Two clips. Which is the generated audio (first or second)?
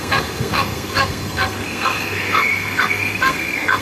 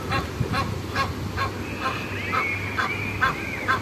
first